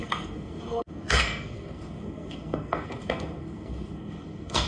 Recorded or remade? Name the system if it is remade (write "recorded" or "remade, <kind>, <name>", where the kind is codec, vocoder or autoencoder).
remade, codec, SNAC